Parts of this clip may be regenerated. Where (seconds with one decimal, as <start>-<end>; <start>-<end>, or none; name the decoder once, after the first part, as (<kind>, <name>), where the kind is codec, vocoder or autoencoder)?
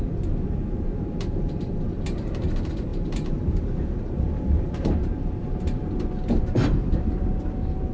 0.0-7.9 (vocoder, BigVGAN v2)